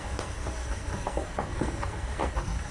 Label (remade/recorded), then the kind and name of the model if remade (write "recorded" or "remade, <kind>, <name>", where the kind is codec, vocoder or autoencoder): remade, codec, SNAC